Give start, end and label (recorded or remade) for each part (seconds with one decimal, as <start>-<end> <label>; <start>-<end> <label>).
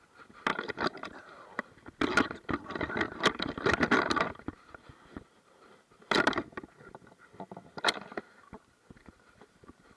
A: 0.0-10.0 recorded